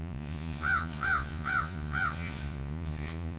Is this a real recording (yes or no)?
no